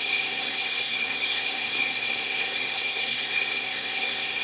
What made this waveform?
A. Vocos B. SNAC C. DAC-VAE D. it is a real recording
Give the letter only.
B